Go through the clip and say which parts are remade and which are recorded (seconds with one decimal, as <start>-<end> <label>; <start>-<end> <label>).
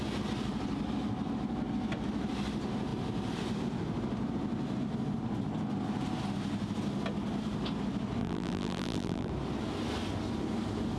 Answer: 0.0-8.2 recorded; 8.2-9.3 remade; 9.3-11.0 recorded